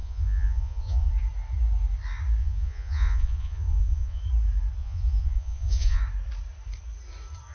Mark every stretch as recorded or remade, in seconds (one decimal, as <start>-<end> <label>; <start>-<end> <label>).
0.0-1.1 remade; 1.1-2.4 recorded; 2.4-4.2 remade; 4.2-4.8 recorded; 4.8-6.0 remade; 6.0-7.5 recorded